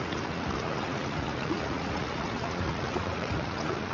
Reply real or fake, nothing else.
fake